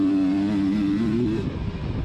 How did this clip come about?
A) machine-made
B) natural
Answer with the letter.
B